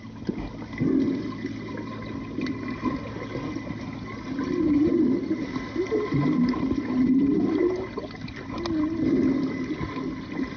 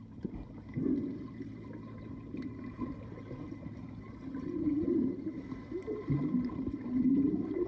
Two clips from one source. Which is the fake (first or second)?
second